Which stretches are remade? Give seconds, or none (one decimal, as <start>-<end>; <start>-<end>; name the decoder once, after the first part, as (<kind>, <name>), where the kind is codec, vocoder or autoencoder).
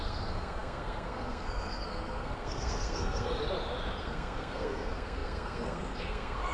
0.0-3.4 (codec, SNAC); 4.0-6.5